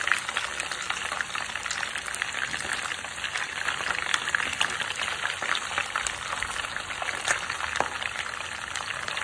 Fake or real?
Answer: real